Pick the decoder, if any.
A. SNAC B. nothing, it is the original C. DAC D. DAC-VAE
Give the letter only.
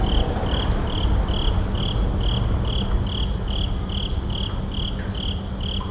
B